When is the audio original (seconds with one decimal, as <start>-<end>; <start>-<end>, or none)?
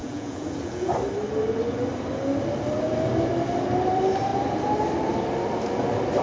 0.9-6.2